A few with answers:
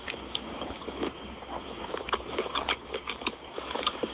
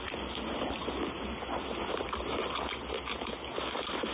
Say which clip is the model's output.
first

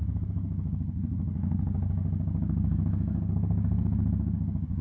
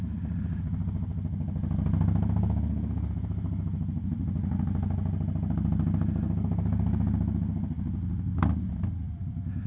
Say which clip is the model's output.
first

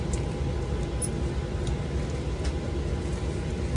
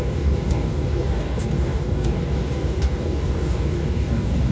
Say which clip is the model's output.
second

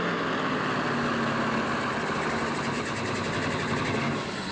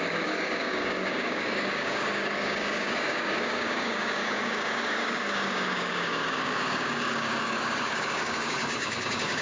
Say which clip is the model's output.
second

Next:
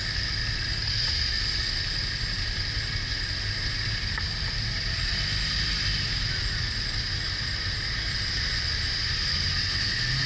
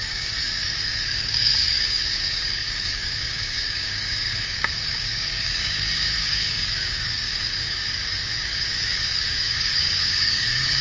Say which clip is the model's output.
second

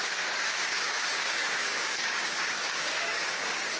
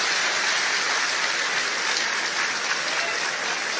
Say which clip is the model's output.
first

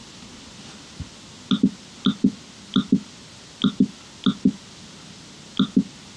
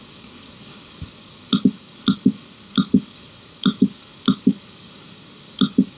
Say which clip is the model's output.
second